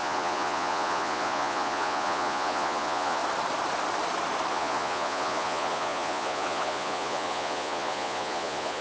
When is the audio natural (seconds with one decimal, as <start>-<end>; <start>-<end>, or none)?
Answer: 3.2-4.5